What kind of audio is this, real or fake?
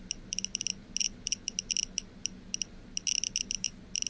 real